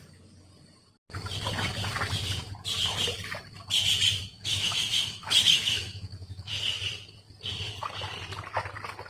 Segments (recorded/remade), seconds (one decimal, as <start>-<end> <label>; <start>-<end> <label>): 0.0-4.3 recorded; 4.3-6.8 remade; 6.8-9.1 recorded